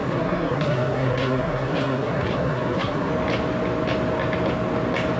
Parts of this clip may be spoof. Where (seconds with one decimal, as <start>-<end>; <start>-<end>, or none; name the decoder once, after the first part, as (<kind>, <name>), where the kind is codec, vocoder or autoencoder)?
0.0-3.1 (codec, SNAC)